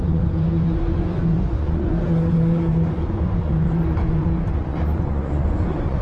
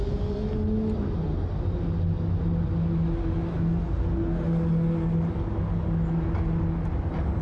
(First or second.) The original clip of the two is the second